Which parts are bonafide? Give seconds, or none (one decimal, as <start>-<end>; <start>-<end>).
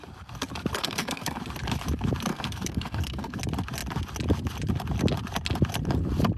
0.0-0.8; 1.4-2.3; 3.4-6.4